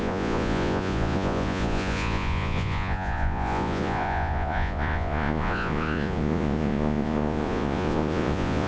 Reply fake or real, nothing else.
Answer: fake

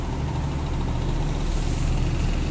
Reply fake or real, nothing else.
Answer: real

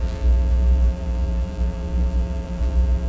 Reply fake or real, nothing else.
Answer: fake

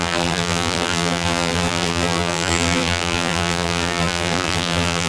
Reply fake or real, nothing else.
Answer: fake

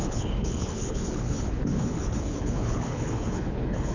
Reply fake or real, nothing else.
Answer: fake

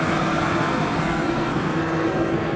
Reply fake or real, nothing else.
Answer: fake